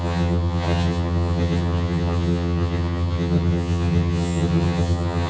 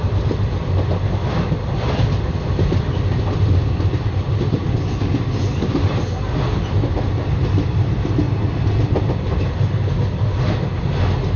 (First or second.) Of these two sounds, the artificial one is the first